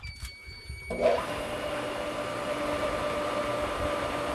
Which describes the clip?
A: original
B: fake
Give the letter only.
B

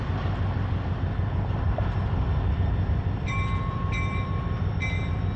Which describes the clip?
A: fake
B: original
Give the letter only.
A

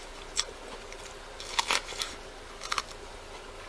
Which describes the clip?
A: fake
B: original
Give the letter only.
B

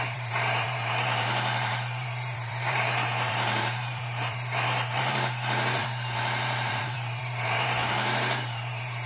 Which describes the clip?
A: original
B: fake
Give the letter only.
B